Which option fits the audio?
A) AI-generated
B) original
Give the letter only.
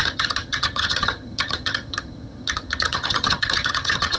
A